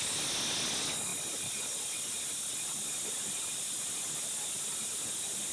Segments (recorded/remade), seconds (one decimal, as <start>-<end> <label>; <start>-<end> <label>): 0.0-5.5 recorded